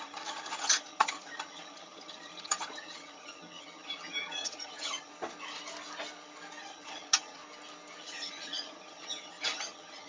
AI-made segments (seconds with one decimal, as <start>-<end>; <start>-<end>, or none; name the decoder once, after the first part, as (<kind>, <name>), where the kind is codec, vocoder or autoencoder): 0.0-5.1 (vocoder, HiFi-GAN); 6.6-7.4; 8.0-10.1